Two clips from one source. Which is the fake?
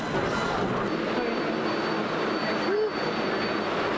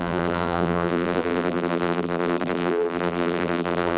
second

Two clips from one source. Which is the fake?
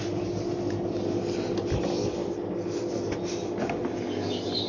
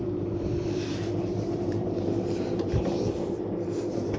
second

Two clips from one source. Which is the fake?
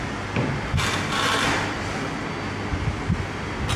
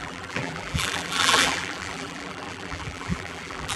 second